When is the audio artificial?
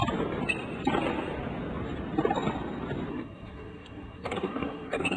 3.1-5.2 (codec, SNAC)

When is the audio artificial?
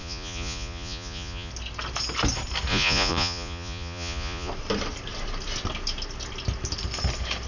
0.0-1.5 (vocoder, Vocos); 2.7-4.5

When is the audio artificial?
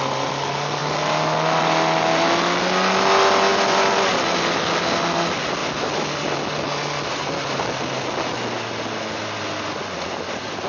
3.5-4.4 (vocoder, BigVGAN v2)